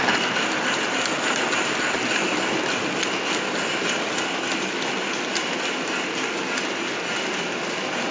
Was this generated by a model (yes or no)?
no